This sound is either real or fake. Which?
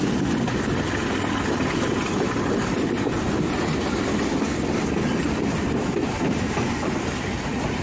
real